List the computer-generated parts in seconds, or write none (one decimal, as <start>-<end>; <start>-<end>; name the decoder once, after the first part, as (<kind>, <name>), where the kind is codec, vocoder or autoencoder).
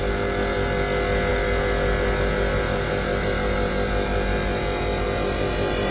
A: none